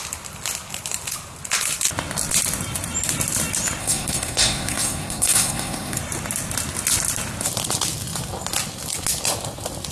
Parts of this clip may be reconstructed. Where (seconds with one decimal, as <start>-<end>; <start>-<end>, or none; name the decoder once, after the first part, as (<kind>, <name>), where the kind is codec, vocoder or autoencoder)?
3.8-6.0 (codec, SNAC)